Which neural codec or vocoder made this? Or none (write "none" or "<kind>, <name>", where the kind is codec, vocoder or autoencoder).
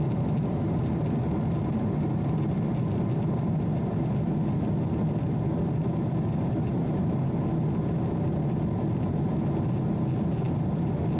none